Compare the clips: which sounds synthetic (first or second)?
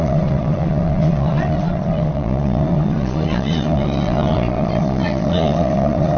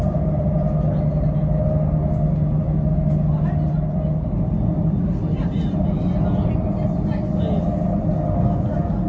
first